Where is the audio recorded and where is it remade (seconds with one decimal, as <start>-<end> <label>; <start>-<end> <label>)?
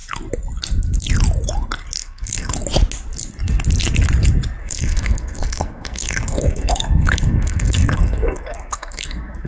0.0-2.0 recorded; 2.0-2.5 remade; 2.5-4.6 recorded; 4.6-9.5 remade